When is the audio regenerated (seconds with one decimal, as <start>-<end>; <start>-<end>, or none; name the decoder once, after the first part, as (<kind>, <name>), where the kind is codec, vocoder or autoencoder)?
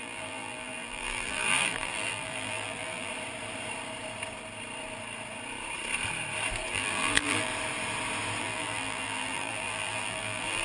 0.0-3.1 (vocoder, BigVGAN v2); 6.7-7.5; 8.4-10.6